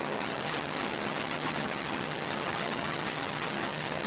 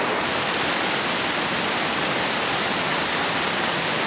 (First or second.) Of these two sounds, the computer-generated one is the first